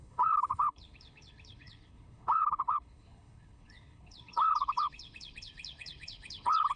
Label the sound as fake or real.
fake